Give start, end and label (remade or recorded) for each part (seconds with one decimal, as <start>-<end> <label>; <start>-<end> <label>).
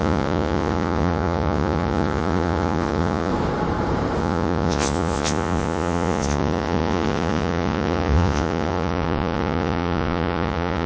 0.0-3.3 remade; 3.3-4.2 recorded; 4.2-10.9 remade